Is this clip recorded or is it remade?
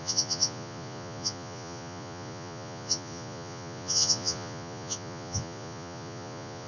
remade